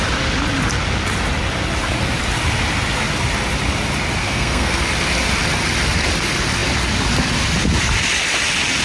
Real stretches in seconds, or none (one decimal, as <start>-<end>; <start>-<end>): 0.0-4.2; 4.8-8.8

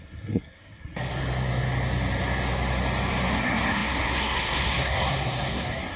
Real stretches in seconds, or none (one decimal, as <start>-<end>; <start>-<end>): 1.2-3.4

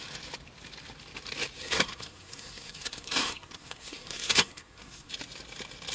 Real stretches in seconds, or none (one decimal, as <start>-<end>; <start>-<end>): 0.0-1.6; 5.1-5.9

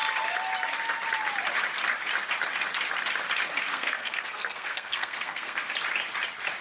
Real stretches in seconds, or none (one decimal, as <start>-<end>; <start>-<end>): 0.0-3.7; 5.7-6.6

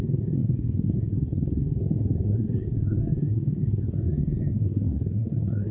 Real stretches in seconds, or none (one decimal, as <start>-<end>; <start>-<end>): none